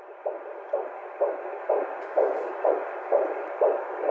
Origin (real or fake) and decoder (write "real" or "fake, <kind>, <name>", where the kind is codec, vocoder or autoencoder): real